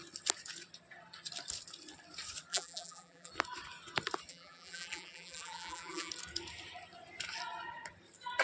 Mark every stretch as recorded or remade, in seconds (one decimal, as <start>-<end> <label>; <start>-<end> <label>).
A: 0.0-2.5 recorded; 2.5-3.3 remade; 3.3-4.3 recorded; 4.3-6.1 remade; 6.1-8.4 recorded

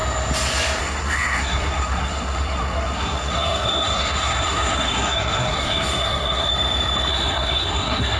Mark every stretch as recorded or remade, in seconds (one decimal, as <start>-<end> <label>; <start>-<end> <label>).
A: 0.0-0.8 recorded; 0.8-6.5 remade; 6.5-7.1 recorded; 7.1-8.2 remade

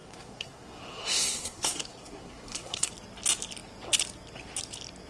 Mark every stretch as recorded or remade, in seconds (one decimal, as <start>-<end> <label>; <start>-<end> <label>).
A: 0.0-2.9 remade; 2.9-5.1 recorded